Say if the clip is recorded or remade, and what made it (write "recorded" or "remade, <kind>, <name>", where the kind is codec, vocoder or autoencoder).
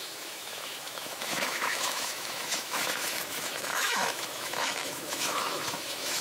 remade, autoencoder, DAC-VAE